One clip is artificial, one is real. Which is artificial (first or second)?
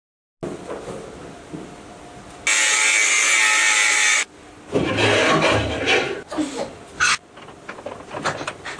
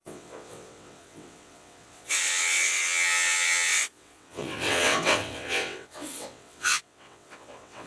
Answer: second